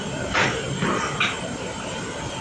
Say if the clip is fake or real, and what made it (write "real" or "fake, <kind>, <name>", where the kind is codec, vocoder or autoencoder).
real